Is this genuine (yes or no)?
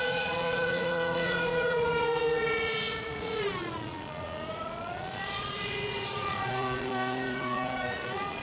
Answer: no